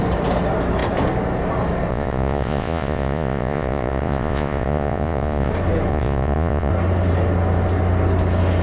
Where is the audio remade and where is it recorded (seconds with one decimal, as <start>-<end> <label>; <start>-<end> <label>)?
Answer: 0.0-1.9 recorded; 1.9-5.5 remade; 5.5-5.9 recorded; 5.9-6.7 remade; 6.7-8.6 recorded